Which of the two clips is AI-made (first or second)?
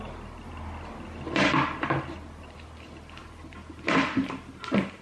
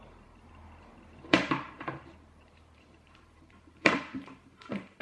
second